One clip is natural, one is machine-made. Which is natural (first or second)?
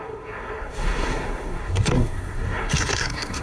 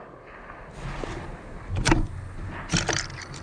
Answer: second